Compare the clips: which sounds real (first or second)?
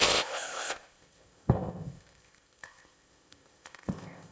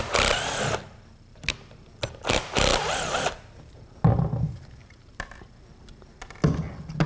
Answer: second